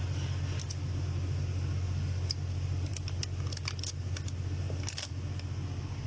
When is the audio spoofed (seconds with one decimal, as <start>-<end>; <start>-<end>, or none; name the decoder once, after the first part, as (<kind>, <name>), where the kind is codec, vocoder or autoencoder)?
none

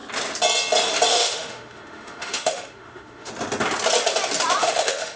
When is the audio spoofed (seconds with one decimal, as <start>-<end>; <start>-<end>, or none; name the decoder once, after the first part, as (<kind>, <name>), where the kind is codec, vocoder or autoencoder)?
1.1-3.3 (autoencoder, DAC-VAE); 4.6-5.2